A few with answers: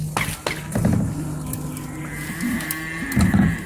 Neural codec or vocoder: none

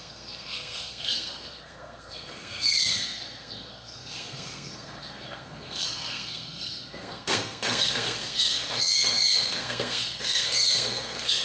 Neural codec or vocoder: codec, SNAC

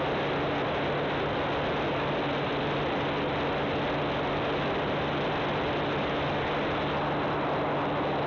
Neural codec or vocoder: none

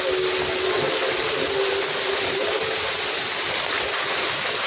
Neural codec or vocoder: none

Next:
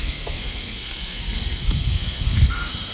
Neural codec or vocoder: codec, SNAC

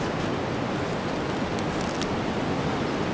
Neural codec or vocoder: none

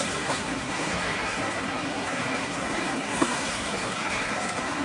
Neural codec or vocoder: codec, SNAC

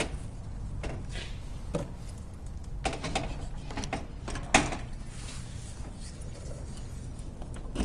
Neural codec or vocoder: none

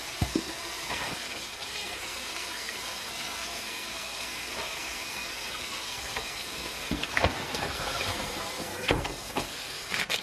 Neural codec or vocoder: codec, SNAC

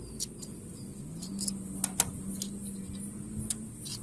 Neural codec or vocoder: none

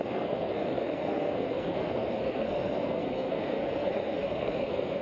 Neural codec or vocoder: codec, SNAC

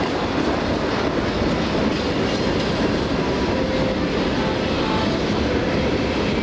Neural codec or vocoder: none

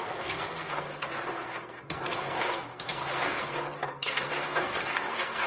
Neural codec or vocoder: codec, SNAC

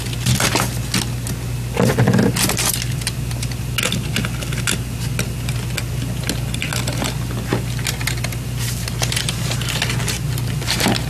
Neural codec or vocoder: none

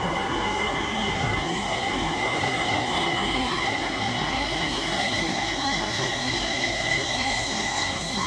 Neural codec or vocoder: codec, SNAC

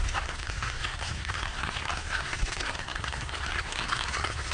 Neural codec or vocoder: codec, SNAC